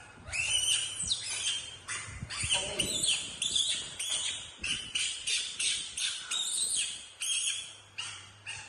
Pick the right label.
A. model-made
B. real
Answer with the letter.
A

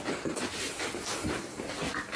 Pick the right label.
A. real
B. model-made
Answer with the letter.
A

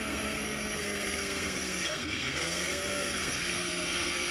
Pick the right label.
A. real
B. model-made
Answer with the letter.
B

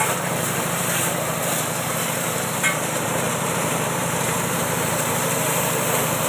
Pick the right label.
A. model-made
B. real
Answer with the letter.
A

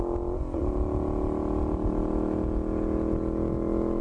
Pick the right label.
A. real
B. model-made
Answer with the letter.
A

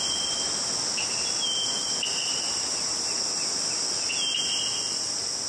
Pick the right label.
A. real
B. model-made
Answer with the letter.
A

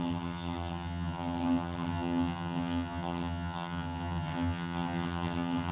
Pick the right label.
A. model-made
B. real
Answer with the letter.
A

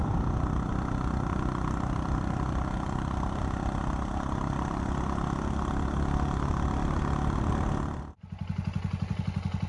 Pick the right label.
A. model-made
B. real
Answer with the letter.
B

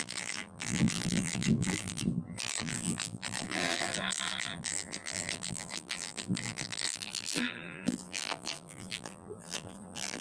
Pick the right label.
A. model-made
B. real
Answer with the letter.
A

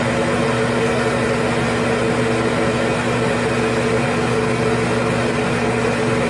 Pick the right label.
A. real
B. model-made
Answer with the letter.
A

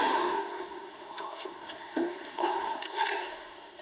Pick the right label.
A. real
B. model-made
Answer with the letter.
B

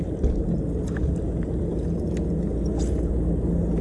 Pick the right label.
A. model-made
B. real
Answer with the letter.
B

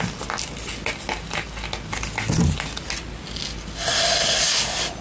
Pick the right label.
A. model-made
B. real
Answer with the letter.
B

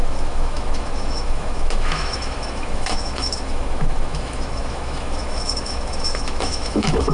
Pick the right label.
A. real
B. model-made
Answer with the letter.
B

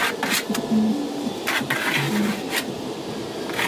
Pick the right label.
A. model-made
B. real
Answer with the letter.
B